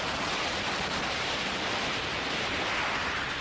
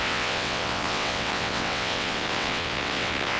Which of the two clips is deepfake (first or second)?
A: second